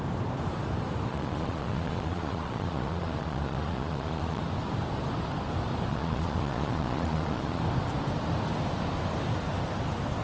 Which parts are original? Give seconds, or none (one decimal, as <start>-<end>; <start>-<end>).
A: 0.0-1.1; 4.4-5.9; 7.6-10.2